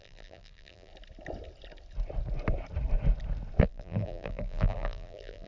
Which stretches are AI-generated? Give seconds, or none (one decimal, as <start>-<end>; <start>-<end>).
0.0-0.9; 3.6-5.5